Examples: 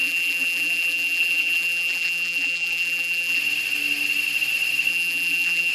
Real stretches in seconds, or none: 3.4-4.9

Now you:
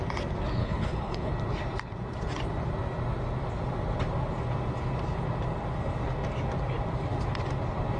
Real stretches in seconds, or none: 0.0-0.6; 1.3-8.0

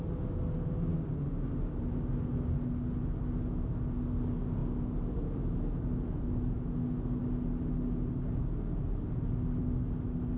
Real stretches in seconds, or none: 0.0-10.4